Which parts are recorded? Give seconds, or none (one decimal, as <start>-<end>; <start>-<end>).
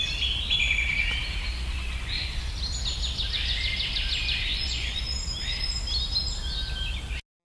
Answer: 0.0-1.5; 2.5-4.5; 5.0-7.4